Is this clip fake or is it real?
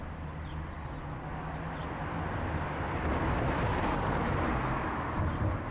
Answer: real